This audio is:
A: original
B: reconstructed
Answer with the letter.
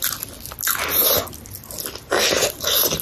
A